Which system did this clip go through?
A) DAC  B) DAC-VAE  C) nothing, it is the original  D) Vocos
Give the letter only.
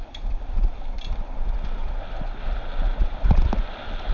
C